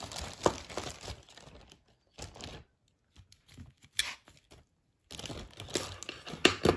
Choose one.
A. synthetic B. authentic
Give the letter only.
B